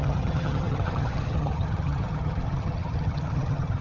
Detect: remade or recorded remade